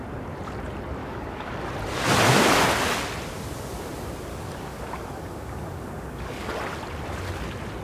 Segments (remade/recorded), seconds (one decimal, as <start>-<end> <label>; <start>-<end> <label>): 0.0-1.0 recorded; 1.0-1.7 remade; 1.7-4.3 recorded; 4.3-6.5 remade; 6.5-7.8 recorded